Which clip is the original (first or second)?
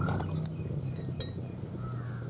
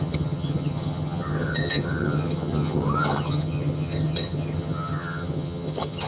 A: first